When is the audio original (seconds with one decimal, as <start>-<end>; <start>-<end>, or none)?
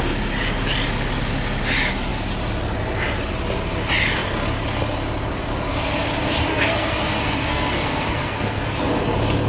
0.0-6.5; 9.0-9.5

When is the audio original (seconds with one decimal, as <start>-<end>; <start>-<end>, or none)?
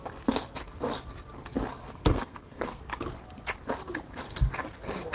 0.0-1.8; 2.8-5.1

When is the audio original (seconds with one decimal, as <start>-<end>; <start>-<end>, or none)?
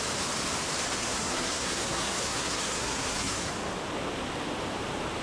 0.0-1.0; 3.5-5.2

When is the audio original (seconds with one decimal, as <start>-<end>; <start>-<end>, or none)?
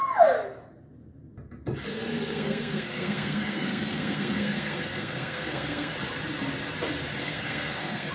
0.0-1.9; 5.9-7.2